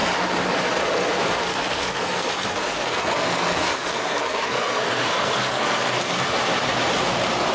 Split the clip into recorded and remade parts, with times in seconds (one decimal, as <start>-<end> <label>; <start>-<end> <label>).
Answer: 0.0-1.5 recorded; 1.5-6.0 remade; 6.0-7.5 recorded